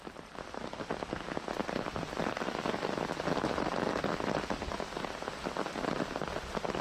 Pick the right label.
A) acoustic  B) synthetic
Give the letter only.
A